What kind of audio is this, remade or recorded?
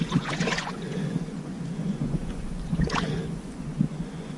remade